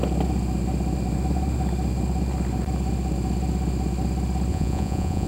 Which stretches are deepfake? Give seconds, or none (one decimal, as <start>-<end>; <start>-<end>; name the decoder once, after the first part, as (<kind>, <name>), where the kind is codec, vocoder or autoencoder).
4.5-5.3 (vocoder, Vocos)